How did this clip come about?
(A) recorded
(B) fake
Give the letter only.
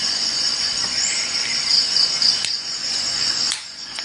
B